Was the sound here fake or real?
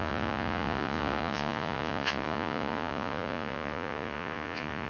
fake